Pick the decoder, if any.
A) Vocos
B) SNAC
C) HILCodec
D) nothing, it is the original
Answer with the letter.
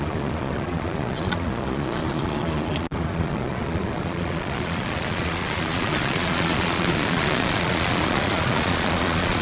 A